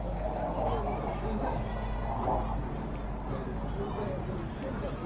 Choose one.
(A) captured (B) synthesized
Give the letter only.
A